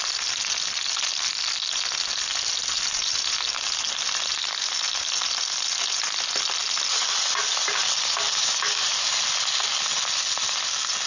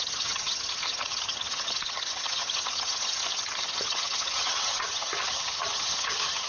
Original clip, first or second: first